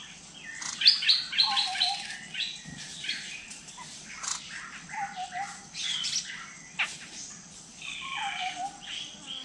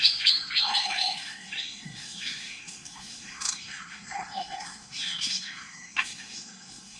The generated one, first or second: second